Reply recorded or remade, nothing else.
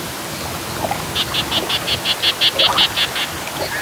recorded